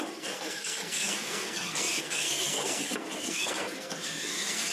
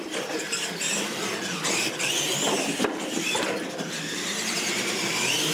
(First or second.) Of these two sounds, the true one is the second